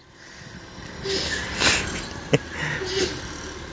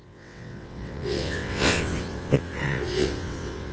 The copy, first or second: second